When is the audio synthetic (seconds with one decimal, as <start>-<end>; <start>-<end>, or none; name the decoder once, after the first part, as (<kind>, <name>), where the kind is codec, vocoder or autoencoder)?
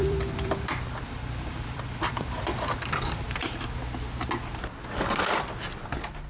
0.0-3.8 (vocoder, BigVGAN v2)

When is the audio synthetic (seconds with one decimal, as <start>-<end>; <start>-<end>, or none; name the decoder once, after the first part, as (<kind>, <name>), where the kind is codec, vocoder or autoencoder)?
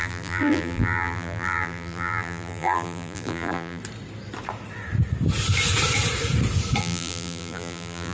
0.0-3.8 (vocoder, BigVGAN v2); 6.8-8.1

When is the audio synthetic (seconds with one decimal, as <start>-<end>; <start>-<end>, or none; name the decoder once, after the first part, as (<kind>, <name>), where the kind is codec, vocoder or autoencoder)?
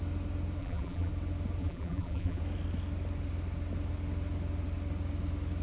0.6-1.1 (vocoder, BigVGAN v2); 1.6-2.4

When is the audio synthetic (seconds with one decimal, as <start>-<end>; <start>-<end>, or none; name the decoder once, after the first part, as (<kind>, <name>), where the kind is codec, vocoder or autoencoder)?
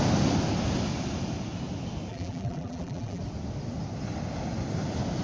2.1-3.2 (vocoder, BigVGAN v2)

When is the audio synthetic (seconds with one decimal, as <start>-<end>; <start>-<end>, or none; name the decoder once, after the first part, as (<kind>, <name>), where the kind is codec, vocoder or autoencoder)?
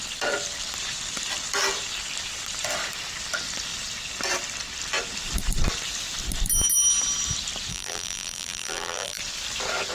7.7-9.2 (vocoder, BigVGAN v2)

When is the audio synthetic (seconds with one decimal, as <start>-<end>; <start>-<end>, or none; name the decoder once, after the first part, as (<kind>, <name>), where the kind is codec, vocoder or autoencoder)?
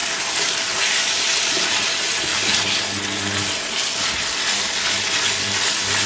0.0-0.7 (vocoder, BigVGAN v2)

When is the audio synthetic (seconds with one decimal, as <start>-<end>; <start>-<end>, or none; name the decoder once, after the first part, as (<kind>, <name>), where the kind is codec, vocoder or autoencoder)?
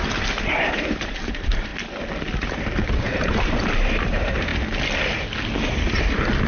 0.0-1.7 (vocoder, BigVGAN v2); 2.6-4.5